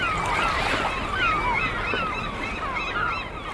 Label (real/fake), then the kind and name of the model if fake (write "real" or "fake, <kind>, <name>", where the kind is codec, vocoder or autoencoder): real